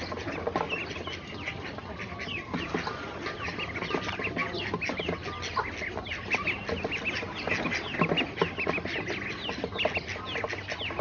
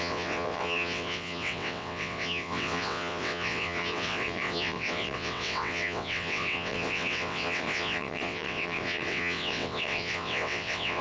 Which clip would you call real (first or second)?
first